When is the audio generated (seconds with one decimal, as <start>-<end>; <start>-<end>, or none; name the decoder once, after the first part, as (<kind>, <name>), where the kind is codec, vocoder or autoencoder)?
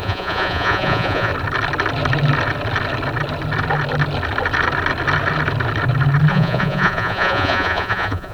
0.0-1.3 (vocoder, Vocos); 6.3-8.3